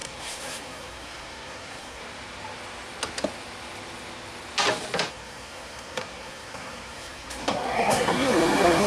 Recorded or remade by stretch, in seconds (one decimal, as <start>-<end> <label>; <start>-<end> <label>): 0.0-2.0 remade; 2.0-5.1 recorded; 5.1-8.9 remade

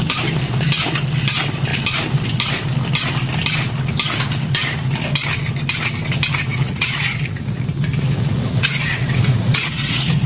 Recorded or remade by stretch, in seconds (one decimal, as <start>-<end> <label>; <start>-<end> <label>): 0.0-6.5 recorded; 6.5-10.3 remade

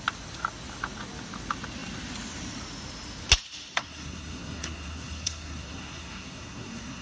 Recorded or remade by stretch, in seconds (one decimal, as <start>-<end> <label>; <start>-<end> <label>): 0.0-3.8 recorded; 3.8-7.0 remade

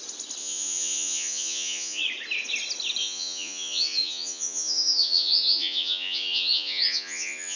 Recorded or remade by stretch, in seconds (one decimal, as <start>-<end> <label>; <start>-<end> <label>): 0.0-0.4 recorded; 0.4-2.0 remade; 2.0-3.0 recorded; 3.0-7.6 remade